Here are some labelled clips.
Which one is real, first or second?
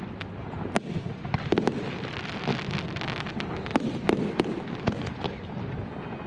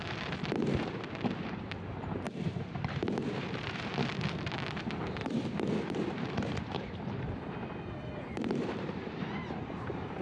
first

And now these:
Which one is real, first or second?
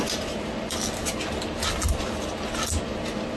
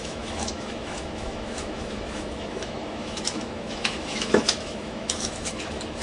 first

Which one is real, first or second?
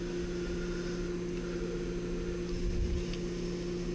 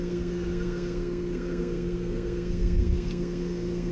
first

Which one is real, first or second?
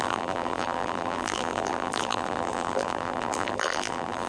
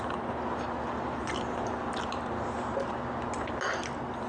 second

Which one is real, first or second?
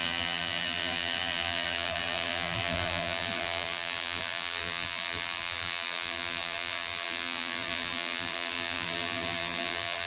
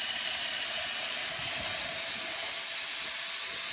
second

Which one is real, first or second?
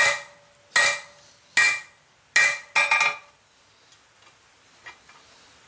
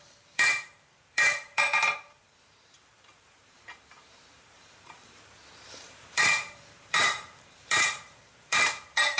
first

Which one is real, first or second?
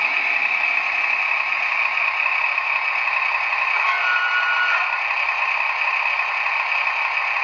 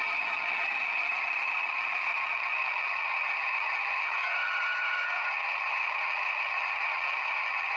first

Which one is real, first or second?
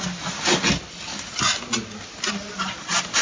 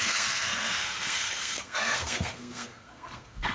first